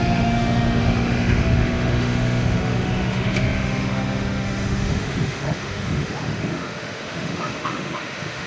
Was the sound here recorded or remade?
remade